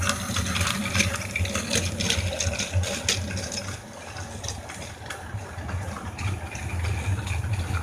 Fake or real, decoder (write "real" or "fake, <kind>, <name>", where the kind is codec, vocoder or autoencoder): real